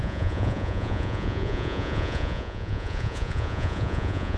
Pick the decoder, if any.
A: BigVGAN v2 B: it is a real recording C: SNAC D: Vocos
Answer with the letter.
D